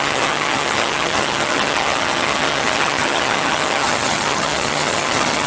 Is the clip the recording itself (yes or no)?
no